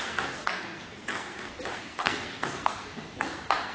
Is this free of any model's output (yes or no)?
no